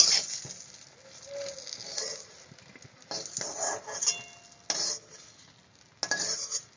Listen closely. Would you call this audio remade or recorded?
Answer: recorded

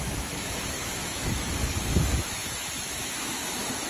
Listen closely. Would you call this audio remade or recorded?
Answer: remade